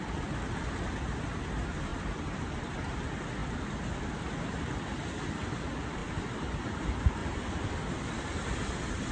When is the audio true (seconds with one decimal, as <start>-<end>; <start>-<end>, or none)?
0.0-1.9; 2.6-3.4; 4.0-6.0; 6.8-7.2; 8.1-9.1